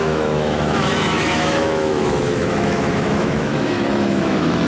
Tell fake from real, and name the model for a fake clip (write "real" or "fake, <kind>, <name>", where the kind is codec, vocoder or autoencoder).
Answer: fake, autoencoder, DAC-VAE